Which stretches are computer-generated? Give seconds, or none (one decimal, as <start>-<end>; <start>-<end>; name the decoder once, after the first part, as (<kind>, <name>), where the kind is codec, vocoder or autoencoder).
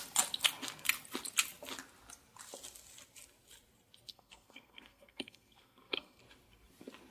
4.1-6.2 (codec, SNAC)